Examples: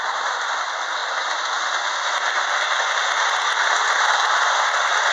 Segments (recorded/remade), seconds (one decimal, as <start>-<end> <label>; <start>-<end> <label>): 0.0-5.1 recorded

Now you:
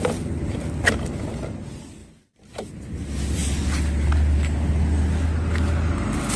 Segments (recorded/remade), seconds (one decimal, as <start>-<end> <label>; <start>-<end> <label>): 0.0-6.4 recorded

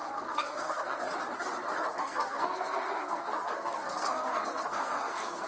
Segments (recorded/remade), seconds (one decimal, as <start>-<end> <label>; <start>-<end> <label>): 0.0-1.0 remade; 1.0-1.9 recorded; 1.9-5.5 remade

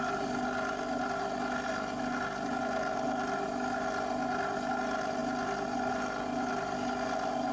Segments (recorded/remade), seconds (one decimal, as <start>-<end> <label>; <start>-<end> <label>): 0.0-7.5 recorded